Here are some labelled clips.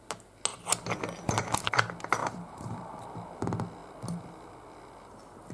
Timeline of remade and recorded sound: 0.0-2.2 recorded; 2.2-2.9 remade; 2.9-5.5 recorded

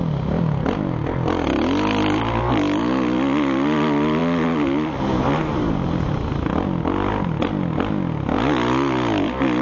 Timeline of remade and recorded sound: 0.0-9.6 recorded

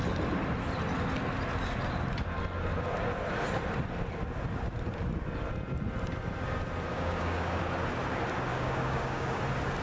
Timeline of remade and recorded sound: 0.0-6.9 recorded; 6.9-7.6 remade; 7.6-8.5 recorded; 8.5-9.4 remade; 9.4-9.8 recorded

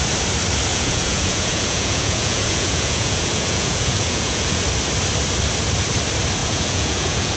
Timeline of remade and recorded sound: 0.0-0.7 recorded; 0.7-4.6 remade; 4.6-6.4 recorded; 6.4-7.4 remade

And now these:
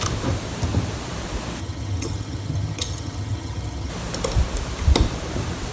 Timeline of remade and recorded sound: 0.0-1.6 recorded; 1.6-3.9 remade; 3.9-5.7 recorded

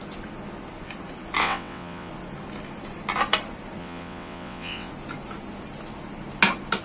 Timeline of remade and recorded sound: 0.0-1.4 recorded; 1.4-2.1 remade; 2.1-3.8 recorded; 3.8-4.9 remade; 4.9-6.8 recorded

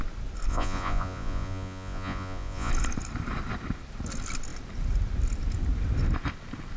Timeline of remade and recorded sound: 0.0-0.5 recorded; 0.5-2.7 remade; 2.7-6.8 recorded

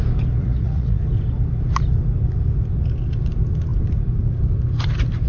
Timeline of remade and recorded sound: 0.0-0.4 recorded; 0.4-1.0 remade; 1.0-5.3 recorded